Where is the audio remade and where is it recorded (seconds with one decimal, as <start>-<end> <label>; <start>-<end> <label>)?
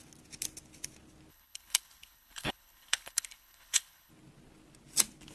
0.0-1.3 recorded; 1.3-4.1 remade; 4.1-5.3 recorded